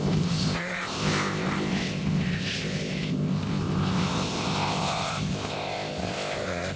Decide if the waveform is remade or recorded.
remade